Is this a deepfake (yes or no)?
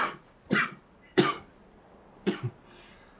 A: no